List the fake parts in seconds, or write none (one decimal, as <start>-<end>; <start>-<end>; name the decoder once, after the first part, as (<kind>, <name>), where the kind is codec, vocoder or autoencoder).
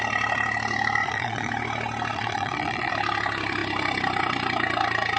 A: 1.0-1.5 (vocoder, Vocos); 2.1-2.9